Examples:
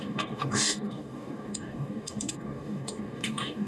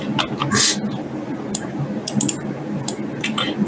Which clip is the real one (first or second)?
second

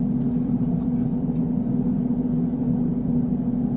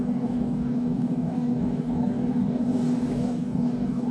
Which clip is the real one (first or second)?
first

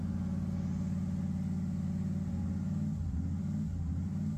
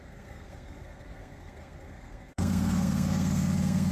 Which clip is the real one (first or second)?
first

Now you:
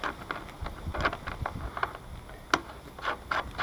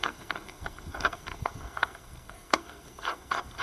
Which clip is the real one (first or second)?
first